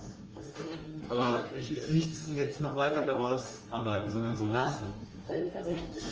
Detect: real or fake fake